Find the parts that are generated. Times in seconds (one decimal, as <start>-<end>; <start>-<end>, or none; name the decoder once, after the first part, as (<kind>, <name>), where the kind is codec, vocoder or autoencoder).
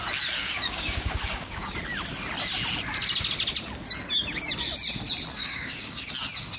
0.4-1.8 (codec, DAC); 5.4-6.1